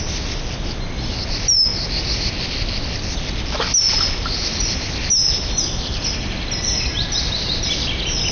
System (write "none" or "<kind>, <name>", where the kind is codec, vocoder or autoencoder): none